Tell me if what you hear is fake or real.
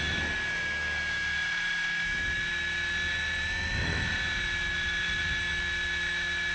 fake